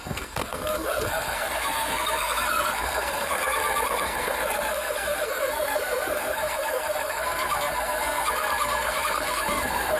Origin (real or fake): fake